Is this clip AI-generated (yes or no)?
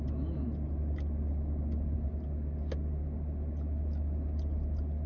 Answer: no